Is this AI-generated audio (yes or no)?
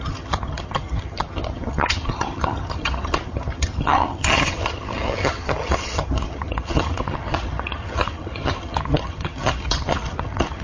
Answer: yes